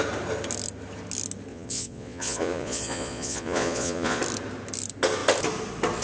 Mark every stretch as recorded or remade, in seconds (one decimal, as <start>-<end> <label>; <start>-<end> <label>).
0.0-1.5 recorded; 1.5-4.2 remade; 4.2-6.0 recorded